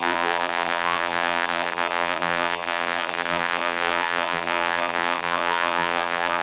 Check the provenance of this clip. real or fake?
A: fake